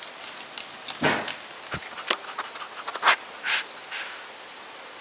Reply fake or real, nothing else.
real